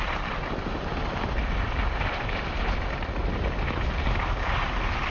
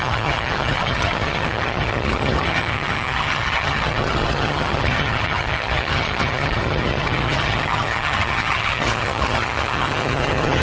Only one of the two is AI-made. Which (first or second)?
second